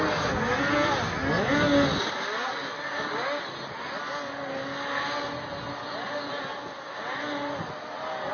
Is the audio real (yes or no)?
yes